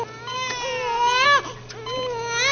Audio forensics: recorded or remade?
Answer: recorded